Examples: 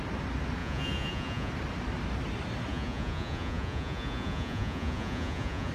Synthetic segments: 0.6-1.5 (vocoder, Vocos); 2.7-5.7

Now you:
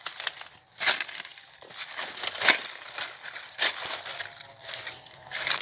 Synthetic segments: none